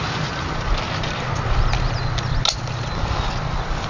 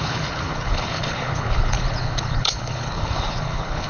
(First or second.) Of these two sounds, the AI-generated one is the second